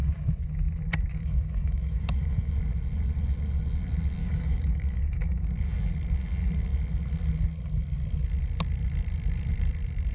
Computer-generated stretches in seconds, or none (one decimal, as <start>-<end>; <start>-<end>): 1.1-2.5; 4.2-5.4